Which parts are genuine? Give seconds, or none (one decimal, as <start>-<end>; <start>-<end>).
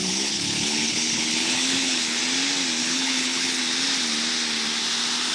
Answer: 2.2-2.8; 3.6-5.3